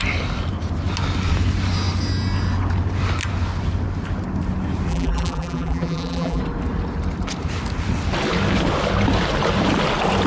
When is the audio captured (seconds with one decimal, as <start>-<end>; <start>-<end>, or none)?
0.0-4.9; 6.4-10.3